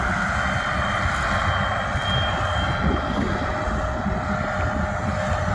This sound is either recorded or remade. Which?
recorded